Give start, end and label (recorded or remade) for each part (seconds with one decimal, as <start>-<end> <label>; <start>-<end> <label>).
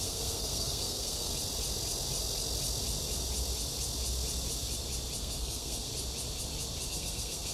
0.0-1.3 remade; 1.3-5.2 recorded; 5.2-5.9 remade; 5.9-6.9 recorded; 6.9-7.5 remade